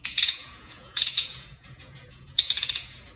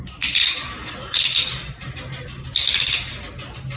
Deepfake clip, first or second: first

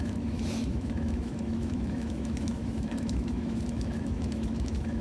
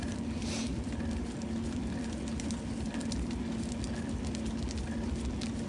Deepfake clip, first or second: first